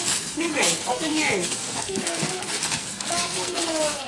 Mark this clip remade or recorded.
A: remade